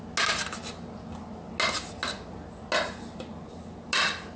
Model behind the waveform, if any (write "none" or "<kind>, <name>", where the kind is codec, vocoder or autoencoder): none